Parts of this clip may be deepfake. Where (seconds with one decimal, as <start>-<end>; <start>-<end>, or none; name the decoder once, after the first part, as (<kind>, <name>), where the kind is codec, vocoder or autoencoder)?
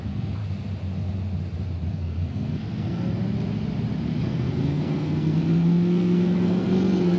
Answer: 0.0-0.4 (codec, SNAC); 1.9-3.2; 4.2-7.2